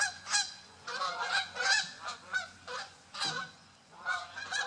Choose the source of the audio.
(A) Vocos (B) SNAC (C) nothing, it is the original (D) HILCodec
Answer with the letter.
A